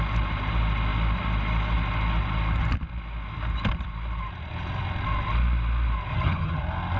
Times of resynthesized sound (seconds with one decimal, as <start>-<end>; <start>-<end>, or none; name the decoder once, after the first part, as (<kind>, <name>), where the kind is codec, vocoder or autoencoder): 6.1-6.6 (vocoder, HiFi-GAN)